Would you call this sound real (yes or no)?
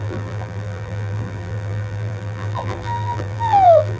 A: no